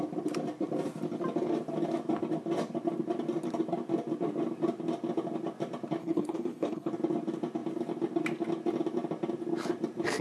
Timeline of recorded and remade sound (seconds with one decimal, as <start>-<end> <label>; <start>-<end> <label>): 0.0-6.0 recorded; 6.0-6.9 remade; 6.9-10.2 recorded